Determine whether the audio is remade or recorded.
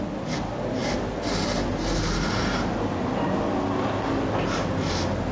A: recorded